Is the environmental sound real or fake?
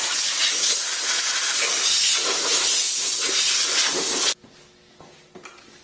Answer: real